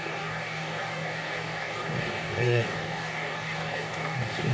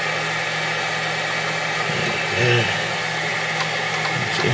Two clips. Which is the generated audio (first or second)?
first